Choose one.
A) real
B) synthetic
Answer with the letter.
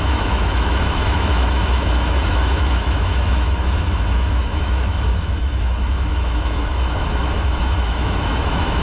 B